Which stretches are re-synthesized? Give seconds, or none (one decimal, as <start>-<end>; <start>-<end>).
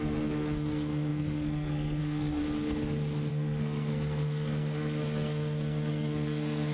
0.0-2.4; 3.3-6.7